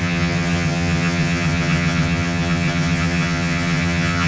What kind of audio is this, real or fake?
fake